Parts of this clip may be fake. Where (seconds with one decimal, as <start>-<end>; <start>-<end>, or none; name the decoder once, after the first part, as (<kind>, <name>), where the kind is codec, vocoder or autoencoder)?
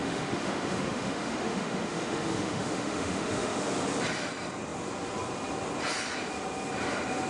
0.0-3.7 (autoencoder, DAC-VAE)